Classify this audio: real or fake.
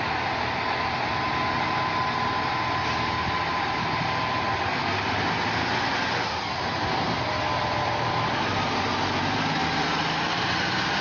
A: real